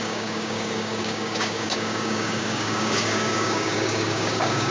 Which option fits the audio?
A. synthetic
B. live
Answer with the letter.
A